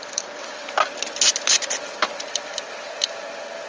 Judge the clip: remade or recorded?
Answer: recorded